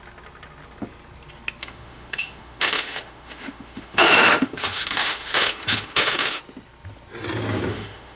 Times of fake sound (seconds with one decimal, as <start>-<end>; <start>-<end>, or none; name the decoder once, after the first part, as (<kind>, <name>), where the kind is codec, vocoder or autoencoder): 1.6-6.4 (autoencoder, DAC-VAE); 7.7-8.2